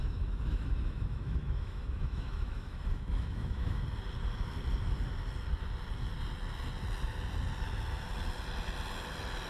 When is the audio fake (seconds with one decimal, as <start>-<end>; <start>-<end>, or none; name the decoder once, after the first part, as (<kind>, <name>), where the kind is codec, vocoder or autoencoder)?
0.0-3.8 (autoencoder, DAC-VAE)

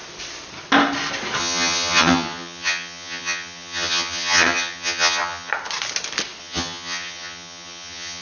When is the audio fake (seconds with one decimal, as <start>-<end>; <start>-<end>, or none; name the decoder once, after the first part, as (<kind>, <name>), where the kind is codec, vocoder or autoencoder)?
1.4-5.5 (vocoder, HiFi-GAN); 6.4-8.2

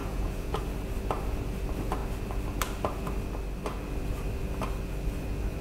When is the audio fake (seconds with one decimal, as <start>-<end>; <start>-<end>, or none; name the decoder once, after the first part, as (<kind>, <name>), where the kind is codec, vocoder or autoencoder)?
0.0-0.6 (vocoder, Vocos)